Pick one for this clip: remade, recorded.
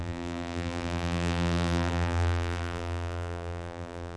remade